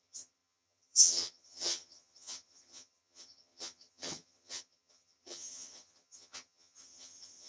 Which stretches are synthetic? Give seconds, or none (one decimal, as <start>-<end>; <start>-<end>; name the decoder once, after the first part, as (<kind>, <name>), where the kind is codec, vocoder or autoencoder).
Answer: 0.0-7.5 (vocoder, HiFi-GAN)